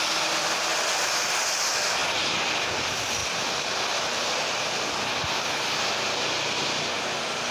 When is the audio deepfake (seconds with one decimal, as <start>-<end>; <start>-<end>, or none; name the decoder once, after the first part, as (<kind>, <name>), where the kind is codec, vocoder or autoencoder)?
none